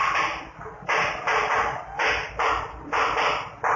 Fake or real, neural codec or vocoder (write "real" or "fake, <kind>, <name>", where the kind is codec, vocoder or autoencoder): real